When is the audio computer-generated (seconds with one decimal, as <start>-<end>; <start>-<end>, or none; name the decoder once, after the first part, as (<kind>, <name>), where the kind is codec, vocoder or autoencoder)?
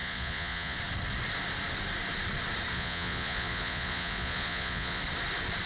0.0-0.8 (vocoder, Vocos); 2.7-5.0